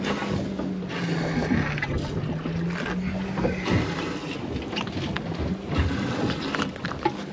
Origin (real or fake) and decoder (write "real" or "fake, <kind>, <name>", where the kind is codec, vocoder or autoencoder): real